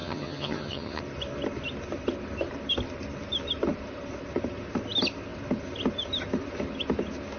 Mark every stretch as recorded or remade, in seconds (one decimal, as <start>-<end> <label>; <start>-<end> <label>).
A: 0.0-1.0 remade; 1.0-7.4 recorded